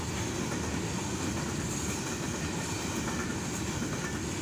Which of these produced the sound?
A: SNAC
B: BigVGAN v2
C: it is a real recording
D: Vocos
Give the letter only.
C